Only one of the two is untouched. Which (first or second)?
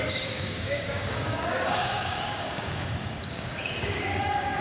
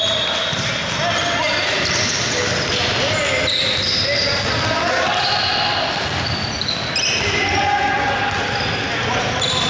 second